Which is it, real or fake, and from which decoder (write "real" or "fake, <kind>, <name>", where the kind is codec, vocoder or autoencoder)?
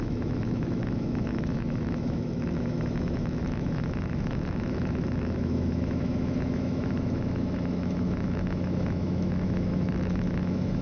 fake, autoencoder, DAC-VAE